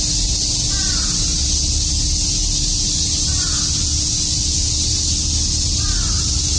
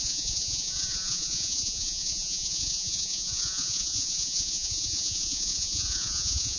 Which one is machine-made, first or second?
second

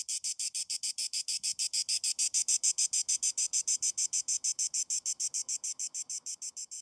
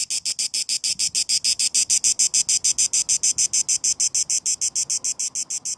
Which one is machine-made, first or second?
first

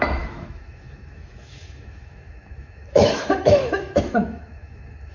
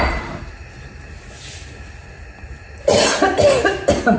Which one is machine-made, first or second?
first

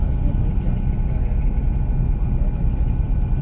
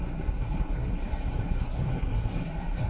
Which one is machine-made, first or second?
second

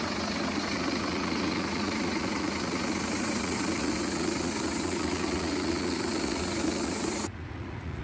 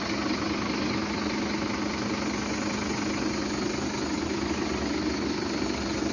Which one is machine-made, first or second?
first